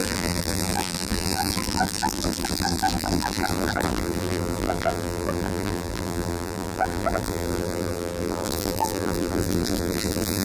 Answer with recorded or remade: remade